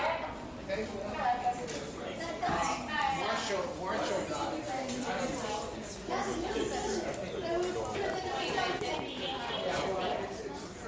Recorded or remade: recorded